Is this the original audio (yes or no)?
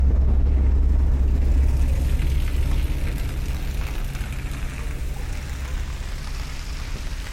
yes